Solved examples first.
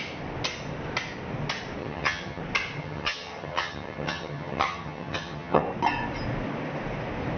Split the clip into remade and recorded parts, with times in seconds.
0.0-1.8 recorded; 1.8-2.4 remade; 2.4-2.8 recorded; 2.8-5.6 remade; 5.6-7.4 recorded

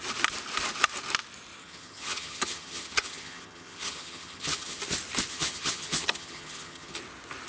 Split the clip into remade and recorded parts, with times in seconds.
0.0-1.6 recorded; 1.6-4.8 remade; 4.8-5.3 recorded; 5.3-7.0 remade; 7.0-7.5 recorded